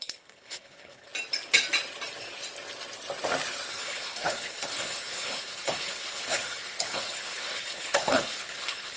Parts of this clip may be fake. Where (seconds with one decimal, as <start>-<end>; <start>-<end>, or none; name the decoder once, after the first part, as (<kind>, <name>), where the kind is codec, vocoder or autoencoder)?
0.0-1.1 (codec, HILCodec); 3.7-9.0

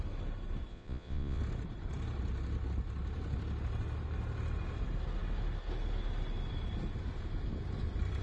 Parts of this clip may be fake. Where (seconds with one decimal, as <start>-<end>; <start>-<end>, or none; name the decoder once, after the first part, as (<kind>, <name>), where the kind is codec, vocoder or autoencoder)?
0.7-1.4 (vocoder, Vocos)